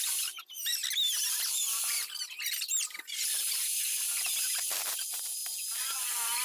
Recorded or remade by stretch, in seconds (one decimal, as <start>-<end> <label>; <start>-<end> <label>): 0.0-6.4 recorded